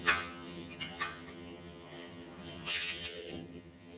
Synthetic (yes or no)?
yes